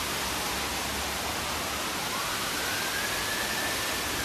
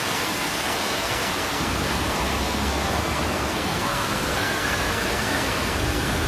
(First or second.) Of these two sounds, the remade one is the second